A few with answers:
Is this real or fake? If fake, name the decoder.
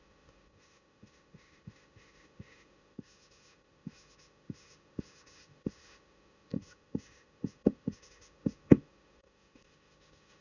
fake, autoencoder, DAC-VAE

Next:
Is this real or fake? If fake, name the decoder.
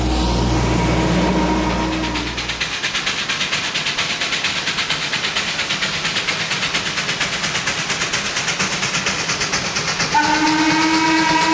real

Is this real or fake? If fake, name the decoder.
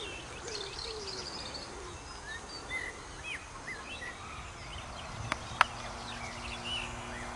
real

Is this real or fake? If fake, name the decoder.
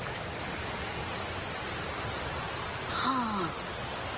real